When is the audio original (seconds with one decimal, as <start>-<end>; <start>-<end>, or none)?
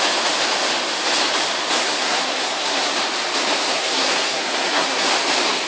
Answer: 0.0-1.8; 2.9-3.7; 5.1-5.7